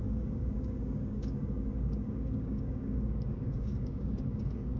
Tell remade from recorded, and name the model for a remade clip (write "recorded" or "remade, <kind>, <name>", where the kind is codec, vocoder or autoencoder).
remade, codec, DAC